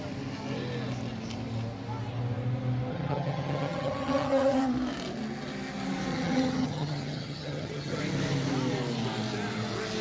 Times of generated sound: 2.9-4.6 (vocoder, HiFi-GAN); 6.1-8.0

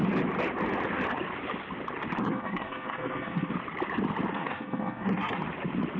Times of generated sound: 2.2-3.5 (codec, SNAC); 4.3-5.4

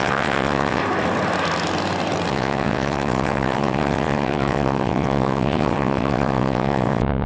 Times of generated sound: 0.0-0.8 (vocoder, WaveNeXt); 2.3-7.3

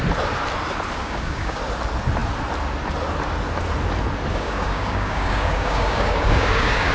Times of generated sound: 1.0-1.6 (codec, DAC); 4.3-6.9

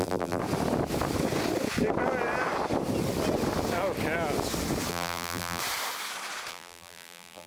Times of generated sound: 0.0-0.4 (vocoder, BigVGAN v2); 4.9-5.6; 6.5-7.5